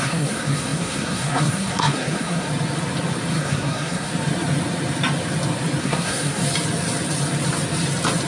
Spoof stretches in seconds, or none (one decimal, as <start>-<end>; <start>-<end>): 0.0-2.5; 3.3-4.1; 5.8-6.4